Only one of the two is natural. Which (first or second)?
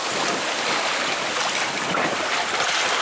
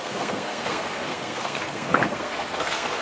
first